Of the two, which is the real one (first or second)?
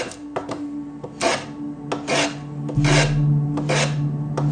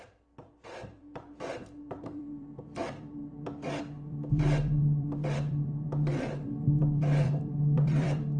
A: first